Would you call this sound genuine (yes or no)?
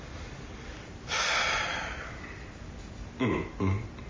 yes